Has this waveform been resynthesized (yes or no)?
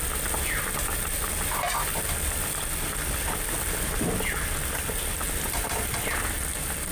no